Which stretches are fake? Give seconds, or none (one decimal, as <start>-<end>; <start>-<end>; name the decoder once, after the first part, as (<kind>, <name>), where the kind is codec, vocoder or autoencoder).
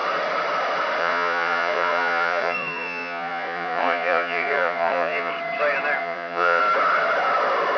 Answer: 1.0-5.3 (vocoder, Vocos); 6.0-6.6